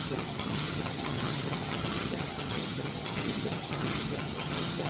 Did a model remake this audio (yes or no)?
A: yes